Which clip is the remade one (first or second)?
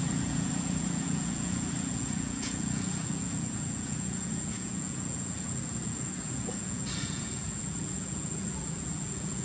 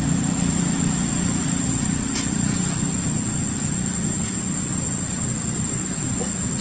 first